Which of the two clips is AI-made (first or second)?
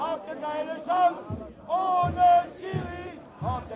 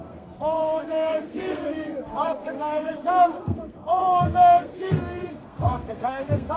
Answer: second